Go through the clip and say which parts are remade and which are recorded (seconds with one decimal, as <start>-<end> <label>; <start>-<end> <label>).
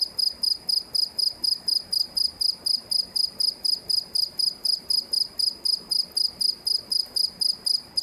0.0-4.6 recorded; 4.6-5.1 remade; 5.1-5.9 recorded; 5.9-7.0 remade; 7.0-8.0 recorded